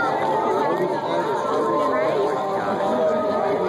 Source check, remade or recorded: recorded